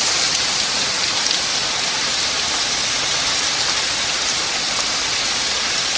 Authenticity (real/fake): real